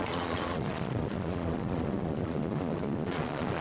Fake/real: fake